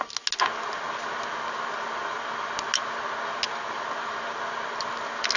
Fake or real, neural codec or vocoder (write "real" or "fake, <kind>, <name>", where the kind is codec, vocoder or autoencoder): real